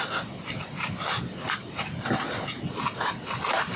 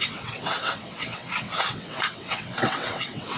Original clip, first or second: first